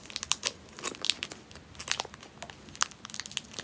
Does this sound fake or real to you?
real